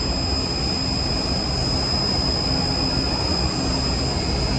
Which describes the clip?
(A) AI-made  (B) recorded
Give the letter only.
B